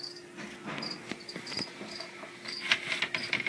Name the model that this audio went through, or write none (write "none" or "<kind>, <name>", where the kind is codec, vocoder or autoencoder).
none